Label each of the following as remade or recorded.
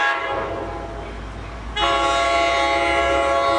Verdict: recorded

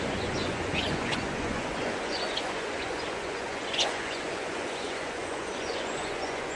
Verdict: remade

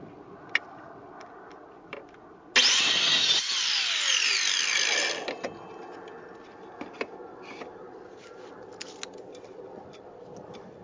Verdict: recorded